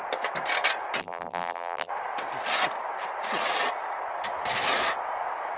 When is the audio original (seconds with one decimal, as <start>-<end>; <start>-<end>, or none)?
0.0-1.0; 1.9-5.6